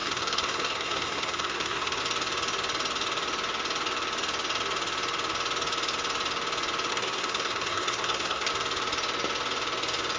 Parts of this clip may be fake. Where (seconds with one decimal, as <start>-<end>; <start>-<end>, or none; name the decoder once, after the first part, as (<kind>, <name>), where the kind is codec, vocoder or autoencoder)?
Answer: 0.0-2.0 (codec, SNAC); 6.9-8.5